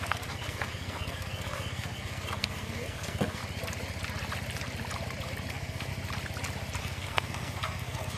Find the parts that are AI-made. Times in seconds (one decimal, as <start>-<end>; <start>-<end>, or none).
0.0-3.4; 5.5-5.9; 6.8-8.2